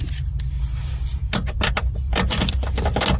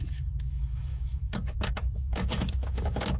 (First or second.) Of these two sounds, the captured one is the first